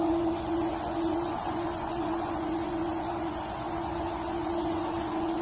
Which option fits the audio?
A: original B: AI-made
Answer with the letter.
B